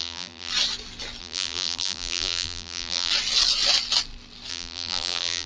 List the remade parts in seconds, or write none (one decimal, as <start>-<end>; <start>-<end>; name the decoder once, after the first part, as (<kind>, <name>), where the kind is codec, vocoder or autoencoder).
0.0-0.5 (vocoder, BigVGAN v2); 1.2-3.1; 4.5-5.5